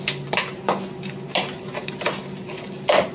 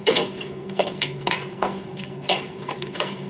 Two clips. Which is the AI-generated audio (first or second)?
second